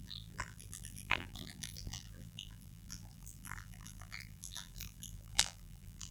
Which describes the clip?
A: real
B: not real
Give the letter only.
B